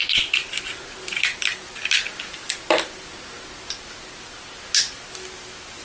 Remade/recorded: recorded